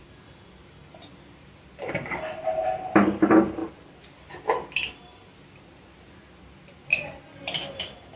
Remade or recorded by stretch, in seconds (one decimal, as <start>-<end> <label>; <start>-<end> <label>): 0.0-8.2 recorded

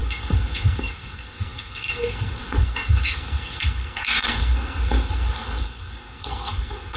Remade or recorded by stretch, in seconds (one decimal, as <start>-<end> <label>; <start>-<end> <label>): 0.0-7.0 remade

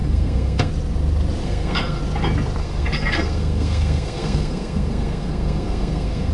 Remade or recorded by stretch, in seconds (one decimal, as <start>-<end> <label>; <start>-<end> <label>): 0.0-0.7 remade; 0.7-1.4 recorded; 1.4-2.0 remade; 2.0-2.6 recorded; 2.6-6.3 remade

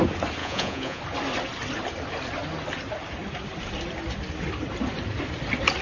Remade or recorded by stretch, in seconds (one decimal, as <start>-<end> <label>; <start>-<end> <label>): 0.0-0.4 recorded; 0.4-1.0 remade; 1.0-5.8 recorded

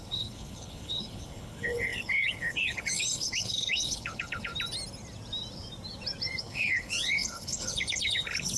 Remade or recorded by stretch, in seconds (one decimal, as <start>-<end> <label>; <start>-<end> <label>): 0.0-4.5 remade; 4.5-6.4 recorded; 6.4-8.6 remade